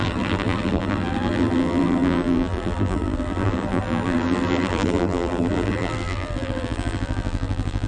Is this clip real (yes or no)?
no